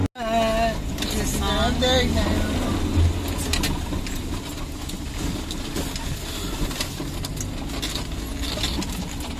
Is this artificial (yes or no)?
no